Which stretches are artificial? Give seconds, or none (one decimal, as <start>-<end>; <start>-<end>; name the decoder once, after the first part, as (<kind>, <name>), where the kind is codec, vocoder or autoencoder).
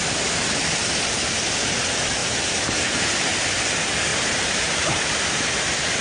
2.2-3.4 (vocoder, BigVGAN v2); 4.1-5.4